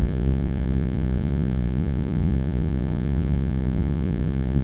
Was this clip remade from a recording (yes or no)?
yes